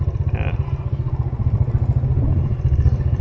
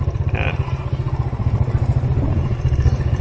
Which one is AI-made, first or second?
second